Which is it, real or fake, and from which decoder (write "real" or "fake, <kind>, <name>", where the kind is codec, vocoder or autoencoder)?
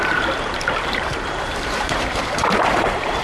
fake, vocoder, BigVGAN v2